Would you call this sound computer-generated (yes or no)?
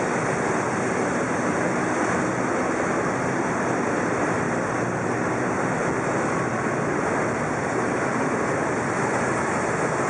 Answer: no